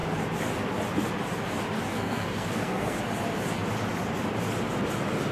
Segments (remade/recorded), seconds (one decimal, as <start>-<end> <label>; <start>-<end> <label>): 0.0-1.9 recorded; 1.9-3.0 remade; 3.0-5.3 recorded